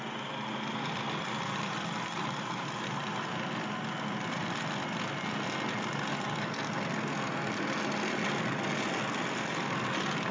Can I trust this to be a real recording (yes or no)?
yes